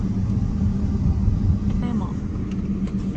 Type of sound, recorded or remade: recorded